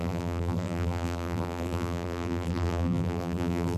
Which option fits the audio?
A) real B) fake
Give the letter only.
B